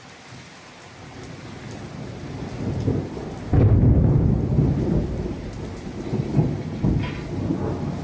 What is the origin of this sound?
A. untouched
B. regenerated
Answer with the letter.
A